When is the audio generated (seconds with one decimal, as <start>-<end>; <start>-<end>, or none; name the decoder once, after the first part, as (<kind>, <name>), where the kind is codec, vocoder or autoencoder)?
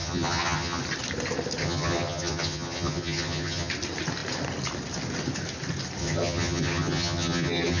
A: 0.0-0.8 (vocoder, HiFi-GAN); 1.6-3.7; 6.0-7.8